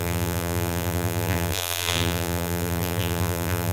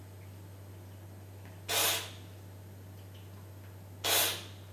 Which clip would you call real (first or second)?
second